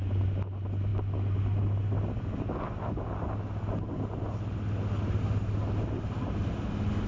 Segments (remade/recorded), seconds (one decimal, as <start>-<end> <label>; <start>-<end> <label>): 0.0-7.1 recorded